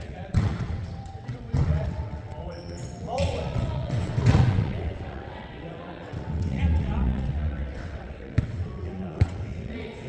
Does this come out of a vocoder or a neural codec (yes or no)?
yes